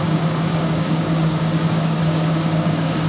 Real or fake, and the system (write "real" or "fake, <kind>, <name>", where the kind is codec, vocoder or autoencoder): fake, codec, DAC